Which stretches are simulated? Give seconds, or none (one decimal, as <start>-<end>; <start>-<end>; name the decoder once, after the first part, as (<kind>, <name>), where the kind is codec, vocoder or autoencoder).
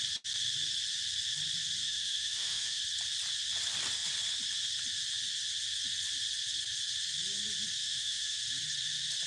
1.8-2.8 (autoencoder, DAC-VAE); 7.8-8.4